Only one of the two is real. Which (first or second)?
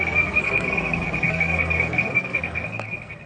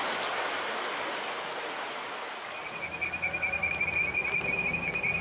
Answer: second